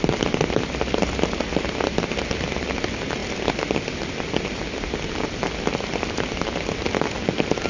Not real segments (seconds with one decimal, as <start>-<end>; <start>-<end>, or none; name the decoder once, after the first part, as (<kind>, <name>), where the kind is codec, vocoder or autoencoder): none